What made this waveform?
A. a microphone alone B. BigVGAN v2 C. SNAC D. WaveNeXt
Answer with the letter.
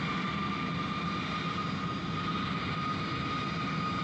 A